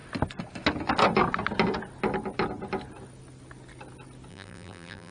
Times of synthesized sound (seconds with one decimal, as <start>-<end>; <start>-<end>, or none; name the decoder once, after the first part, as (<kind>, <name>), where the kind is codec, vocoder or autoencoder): 4.3-5.1 (vocoder, BigVGAN v2)